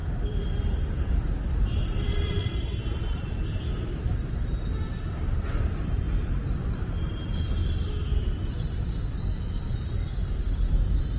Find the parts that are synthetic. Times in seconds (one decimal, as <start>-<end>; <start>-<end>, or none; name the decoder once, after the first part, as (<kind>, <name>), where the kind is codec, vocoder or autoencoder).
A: 0.0-1.3 (vocoder, BigVGAN v2); 2.1-4.7